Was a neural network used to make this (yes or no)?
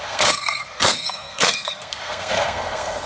yes